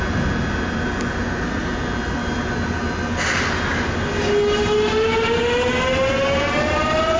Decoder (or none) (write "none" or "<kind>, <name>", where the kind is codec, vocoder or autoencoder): none